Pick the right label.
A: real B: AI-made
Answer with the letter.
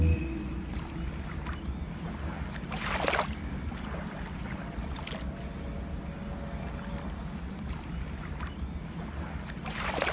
A